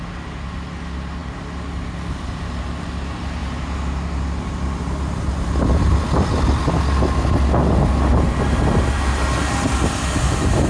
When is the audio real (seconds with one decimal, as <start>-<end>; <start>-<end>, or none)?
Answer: 0.0-10.7